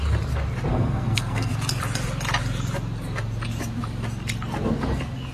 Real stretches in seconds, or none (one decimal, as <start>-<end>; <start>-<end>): 0.0-0.7; 1.5-5.3